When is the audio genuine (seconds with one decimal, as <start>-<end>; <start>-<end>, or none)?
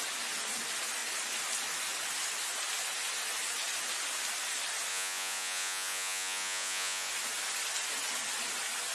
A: 0.0-4.9; 7.1-8.9